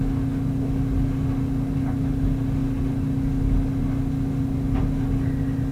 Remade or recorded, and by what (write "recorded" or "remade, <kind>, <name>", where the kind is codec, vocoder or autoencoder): recorded